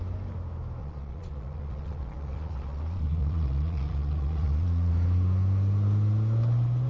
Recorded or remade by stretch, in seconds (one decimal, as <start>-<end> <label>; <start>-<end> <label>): 0.0-0.8 recorded; 0.8-4.9 remade; 4.9-6.9 recorded